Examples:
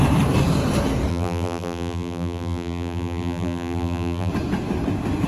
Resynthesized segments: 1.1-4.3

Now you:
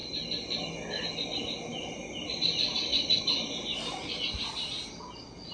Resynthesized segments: 1.7-3.2

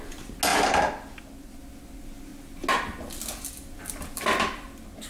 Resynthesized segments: none

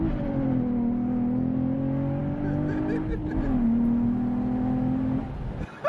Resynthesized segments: none

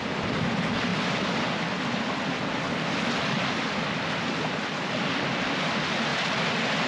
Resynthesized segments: none

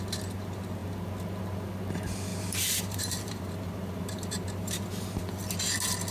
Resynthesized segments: 2.3-5.2